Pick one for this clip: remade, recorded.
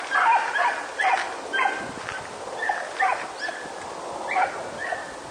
recorded